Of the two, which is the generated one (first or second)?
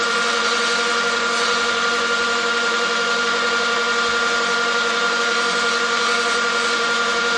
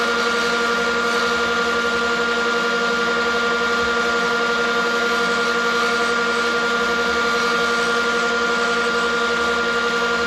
first